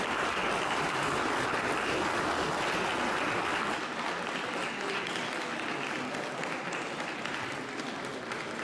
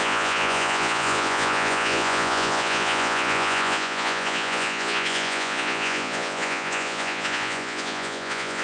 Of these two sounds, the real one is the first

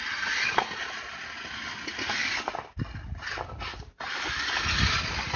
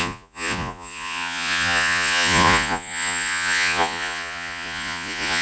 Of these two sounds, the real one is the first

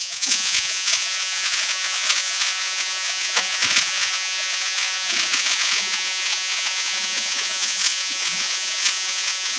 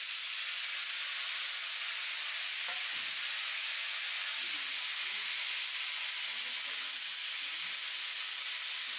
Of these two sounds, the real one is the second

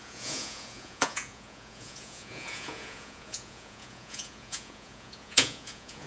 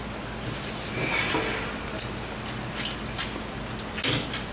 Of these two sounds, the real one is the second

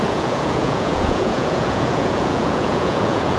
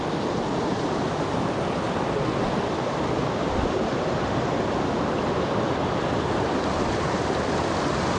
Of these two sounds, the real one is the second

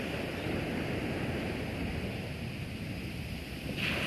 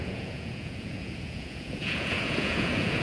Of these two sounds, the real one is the first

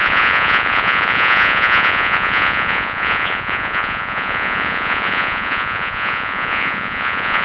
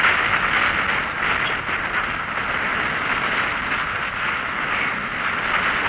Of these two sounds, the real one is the second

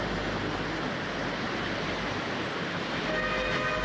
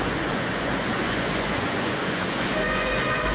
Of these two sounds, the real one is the first